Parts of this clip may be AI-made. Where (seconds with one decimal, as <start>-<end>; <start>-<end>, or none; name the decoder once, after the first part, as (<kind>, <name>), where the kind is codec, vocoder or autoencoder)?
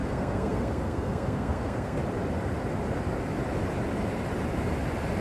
0.0-2.0 (codec, SNAC)